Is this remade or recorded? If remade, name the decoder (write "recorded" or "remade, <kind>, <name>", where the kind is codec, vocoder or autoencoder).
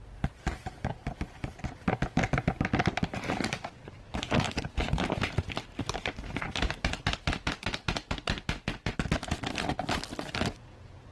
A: recorded